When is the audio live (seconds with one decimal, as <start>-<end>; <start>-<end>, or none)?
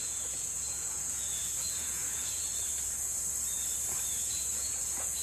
2.5-4.1